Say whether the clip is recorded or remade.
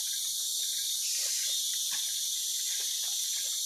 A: recorded